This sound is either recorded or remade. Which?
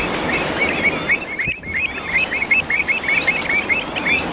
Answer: recorded